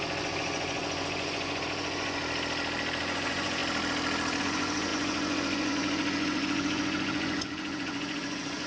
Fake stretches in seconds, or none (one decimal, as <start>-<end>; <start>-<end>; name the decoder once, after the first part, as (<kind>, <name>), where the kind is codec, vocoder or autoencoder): 0.0-2.2 (vocoder, Vocos); 3.0-3.6; 4.4-8.7